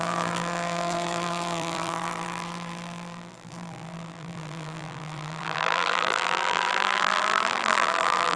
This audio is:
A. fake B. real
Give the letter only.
A